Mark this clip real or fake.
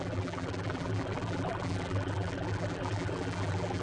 fake